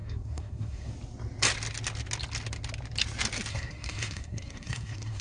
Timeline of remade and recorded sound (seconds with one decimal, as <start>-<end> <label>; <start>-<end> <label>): 0.0-0.9 remade; 0.9-3.5 recorded; 3.5-5.2 remade